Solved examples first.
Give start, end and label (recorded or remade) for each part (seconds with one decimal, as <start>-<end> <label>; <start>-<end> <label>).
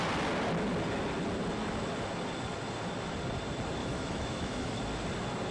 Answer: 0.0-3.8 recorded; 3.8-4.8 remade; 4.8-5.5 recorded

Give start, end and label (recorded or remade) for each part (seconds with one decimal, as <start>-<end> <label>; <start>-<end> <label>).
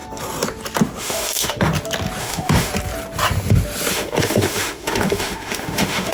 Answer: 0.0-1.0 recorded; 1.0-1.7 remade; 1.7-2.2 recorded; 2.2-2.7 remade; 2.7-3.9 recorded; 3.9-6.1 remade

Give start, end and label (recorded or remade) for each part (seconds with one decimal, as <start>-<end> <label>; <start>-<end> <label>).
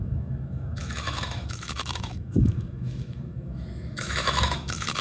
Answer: 0.0-5.0 remade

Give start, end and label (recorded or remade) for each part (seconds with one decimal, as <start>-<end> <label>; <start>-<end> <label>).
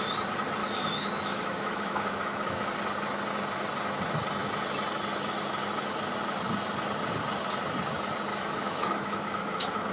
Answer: 0.0-0.6 recorded; 0.6-2.7 remade; 2.7-8.3 recorded; 8.3-9.9 remade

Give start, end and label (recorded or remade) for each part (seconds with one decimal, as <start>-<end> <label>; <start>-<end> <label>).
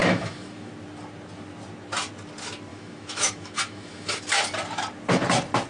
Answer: 0.0-0.7 remade; 0.7-2.7 recorded; 2.7-4.2 remade; 4.2-5.7 recorded